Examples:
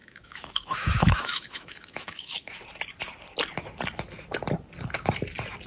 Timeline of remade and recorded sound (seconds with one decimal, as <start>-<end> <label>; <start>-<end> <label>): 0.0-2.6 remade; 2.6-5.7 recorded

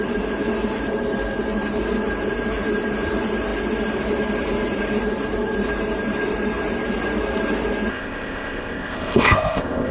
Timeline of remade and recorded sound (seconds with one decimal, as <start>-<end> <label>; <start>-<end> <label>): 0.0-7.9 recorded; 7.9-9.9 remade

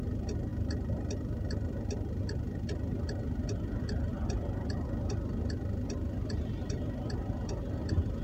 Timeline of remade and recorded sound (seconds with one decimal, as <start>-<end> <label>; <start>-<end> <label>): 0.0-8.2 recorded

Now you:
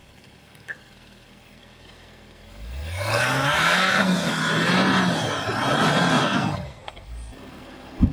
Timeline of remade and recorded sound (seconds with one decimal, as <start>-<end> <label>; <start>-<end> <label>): 0.0-4.4 remade; 4.4-6.1 recorded; 6.1-8.1 remade

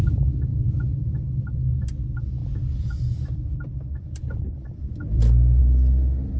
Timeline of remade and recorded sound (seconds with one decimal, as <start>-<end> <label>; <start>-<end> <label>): 0.0-0.5 recorded; 0.5-1.3 remade; 1.3-2.4 recorded; 2.4-5.6 remade; 5.6-6.4 recorded